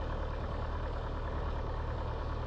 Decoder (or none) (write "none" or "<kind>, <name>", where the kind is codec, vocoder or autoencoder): codec, DAC